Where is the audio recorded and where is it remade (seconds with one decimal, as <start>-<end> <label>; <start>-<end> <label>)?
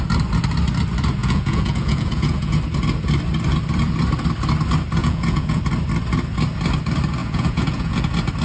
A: 0.0-1.2 recorded; 1.2-2.6 remade; 2.6-5.0 recorded; 5.0-5.6 remade; 5.6-7.2 recorded; 7.2-8.0 remade; 8.0-8.4 recorded